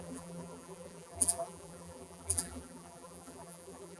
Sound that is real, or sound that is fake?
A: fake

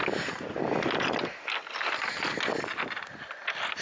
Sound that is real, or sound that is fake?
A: real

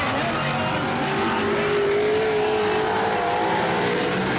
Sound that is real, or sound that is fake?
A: real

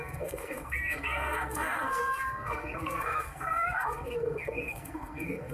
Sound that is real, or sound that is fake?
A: fake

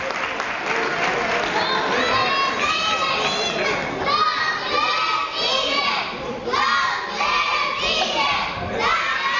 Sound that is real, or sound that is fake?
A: real